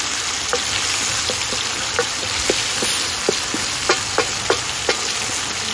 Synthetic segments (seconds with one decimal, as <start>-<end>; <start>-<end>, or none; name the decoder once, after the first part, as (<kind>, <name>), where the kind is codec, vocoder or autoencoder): none